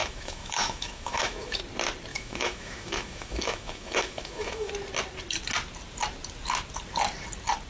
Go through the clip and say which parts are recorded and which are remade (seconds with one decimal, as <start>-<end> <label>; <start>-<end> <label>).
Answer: 0.0-1.6 remade; 1.6-2.1 recorded; 2.1-4.7 remade; 4.7-7.7 recorded